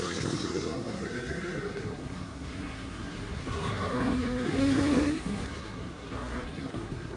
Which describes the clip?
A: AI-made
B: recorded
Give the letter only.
A